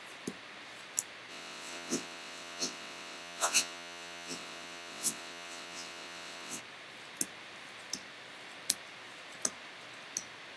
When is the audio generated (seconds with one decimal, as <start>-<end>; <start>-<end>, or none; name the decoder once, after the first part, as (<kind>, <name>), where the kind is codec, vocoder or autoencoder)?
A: 1.3-6.6 (vocoder, WaveNeXt)